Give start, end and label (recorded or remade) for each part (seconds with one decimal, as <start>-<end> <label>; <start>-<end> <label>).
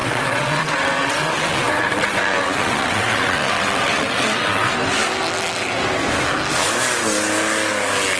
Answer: 0.0-4.7 remade; 4.7-8.2 recorded